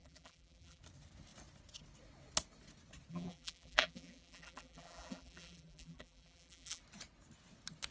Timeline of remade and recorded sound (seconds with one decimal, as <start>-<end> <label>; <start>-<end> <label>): 0.0-0.8 remade; 0.8-3.1 recorded; 3.1-6.8 remade; 6.8-7.9 recorded